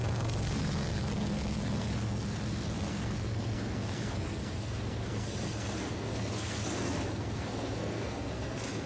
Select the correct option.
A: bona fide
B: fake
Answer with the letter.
B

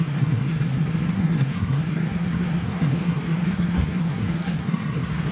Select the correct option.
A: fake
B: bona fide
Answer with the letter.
A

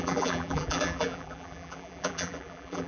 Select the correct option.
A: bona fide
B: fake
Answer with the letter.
B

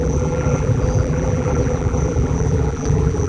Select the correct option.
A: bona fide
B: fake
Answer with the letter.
B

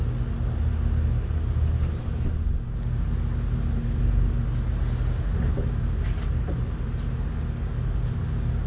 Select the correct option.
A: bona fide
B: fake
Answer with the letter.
A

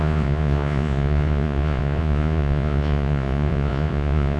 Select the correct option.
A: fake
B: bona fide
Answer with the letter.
A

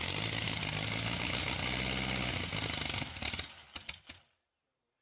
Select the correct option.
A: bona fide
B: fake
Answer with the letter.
A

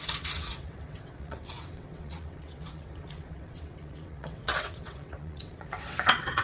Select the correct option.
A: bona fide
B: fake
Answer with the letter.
B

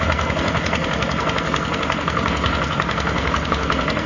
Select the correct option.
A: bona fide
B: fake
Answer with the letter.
B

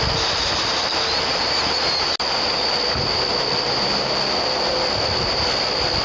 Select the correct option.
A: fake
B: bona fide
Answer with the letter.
B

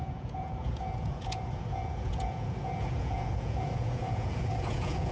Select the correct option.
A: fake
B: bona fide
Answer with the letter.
A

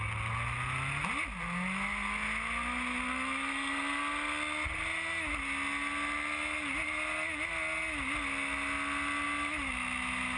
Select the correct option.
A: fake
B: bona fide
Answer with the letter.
B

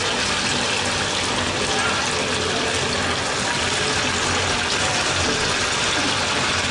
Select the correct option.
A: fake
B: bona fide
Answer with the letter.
B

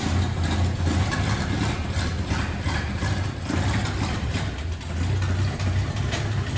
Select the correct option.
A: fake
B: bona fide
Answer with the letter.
B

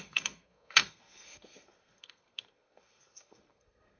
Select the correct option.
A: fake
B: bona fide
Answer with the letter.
A